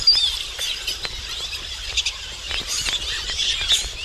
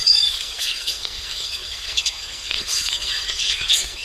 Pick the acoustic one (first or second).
first